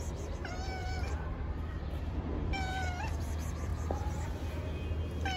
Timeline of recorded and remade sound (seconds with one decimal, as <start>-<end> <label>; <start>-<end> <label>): 0.0-0.8 recorded; 0.8-2.0 remade; 2.0-3.7 recorded; 3.7-4.4 remade; 4.4-5.4 recorded